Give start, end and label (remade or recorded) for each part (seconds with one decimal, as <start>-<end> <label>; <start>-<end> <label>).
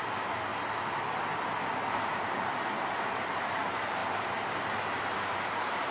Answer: 0.0-0.5 remade; 0.5-2.8 recorded; 2.8-5.9 remade